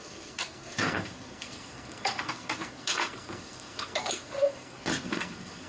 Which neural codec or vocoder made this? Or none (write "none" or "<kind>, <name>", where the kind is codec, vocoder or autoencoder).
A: codec, SNAC